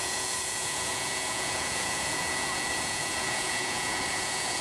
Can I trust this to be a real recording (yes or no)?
no